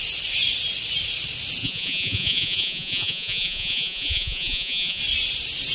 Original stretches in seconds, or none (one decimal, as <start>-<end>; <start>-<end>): 0.0-1.6; 5.0-5.7